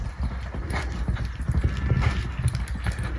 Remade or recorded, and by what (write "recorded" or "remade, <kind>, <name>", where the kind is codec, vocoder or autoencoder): recorded